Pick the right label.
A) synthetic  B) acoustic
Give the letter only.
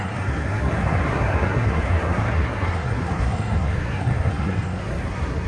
A